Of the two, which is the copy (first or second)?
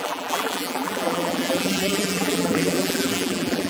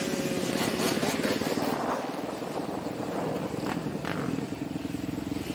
first